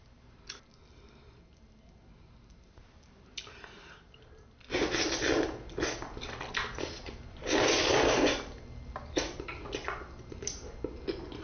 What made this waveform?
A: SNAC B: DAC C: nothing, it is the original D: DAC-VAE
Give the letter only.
C